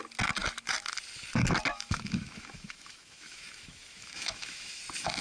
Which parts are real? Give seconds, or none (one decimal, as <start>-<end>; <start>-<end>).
0.0-1.7; 4.8-5.2